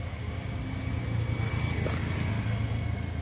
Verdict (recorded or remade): recorded